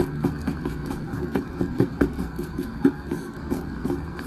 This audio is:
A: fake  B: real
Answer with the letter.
A